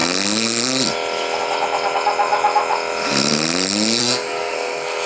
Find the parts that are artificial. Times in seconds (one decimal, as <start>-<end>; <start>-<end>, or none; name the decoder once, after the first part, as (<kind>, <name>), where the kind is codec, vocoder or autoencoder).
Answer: 4.0-5.1 (codec, SNAC)